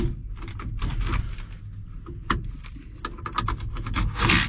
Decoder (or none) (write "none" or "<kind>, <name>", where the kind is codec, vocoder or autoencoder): none